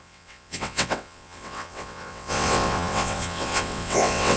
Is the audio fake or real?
fake